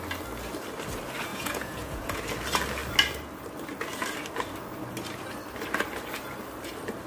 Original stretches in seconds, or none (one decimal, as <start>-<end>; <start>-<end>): 0.0-1.3; 2.2-7.1